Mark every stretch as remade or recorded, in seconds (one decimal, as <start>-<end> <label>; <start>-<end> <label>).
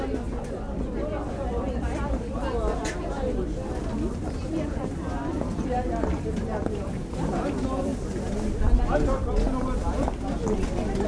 0.0-11.1 recorded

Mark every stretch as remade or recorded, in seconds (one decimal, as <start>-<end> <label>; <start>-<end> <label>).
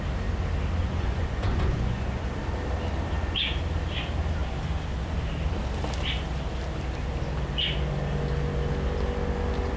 0.0-0.8 recorded; 0.8-2.3 remade; 2.3-9.8 recorded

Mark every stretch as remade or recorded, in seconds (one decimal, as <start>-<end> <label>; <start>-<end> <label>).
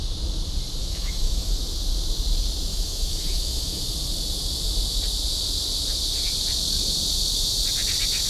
0.0-0.8 recorded; 0.8-1.5 remade; 1.5-2.7 recorded; 2.7-3.8 remade; 3.8-8.3 recorded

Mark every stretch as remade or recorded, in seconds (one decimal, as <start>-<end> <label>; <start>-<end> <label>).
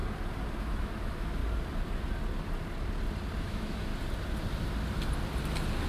0.0-0.6 recorded; 0.6-1.4 remade; 1.4-3.4 recorded; 3.4-3.9 remade; 3.9-5.9 recorded